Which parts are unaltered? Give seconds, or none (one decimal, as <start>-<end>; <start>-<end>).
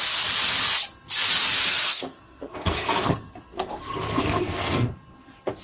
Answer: 0.0-1.7; 4.9-5.6